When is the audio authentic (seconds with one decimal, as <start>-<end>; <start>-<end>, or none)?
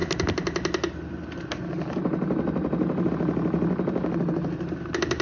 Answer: 0.0-5.2